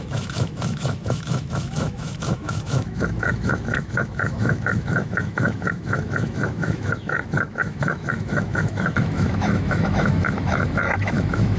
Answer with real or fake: fake